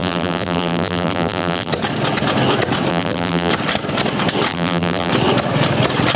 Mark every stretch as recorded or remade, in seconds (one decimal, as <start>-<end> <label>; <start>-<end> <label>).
0.0-1.7 remade; 1.7-2.9 recorded; 2.9-3.5 remade; 3.5-4.5 recorded; 4.5-5.1 remade; 5.1-6.2 recorded